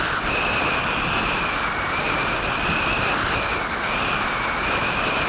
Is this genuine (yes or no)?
yes